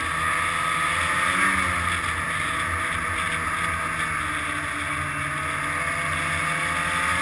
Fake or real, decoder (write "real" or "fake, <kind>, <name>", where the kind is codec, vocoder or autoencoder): real